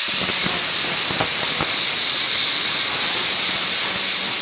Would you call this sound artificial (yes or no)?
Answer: no